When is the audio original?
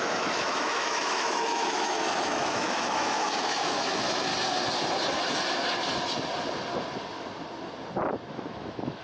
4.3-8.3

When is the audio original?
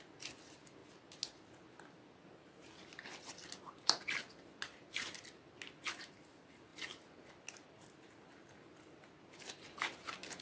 0.0-10.4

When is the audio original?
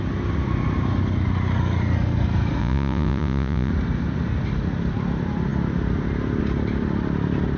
0.0-2.6; 3.7-7.6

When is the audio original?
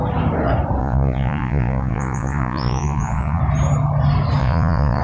0.0-0.8; 3.4-4.4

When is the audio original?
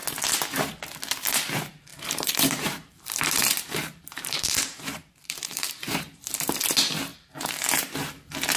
0.0-1.9; 6.6-7.1; 7.9-8.6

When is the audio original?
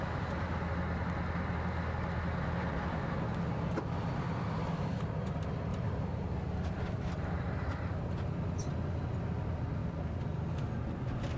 0.0-5.7; 6.9-7.7; 8.2-9.8; 10.6-11.4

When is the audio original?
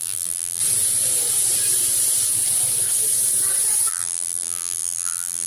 0.6-3.9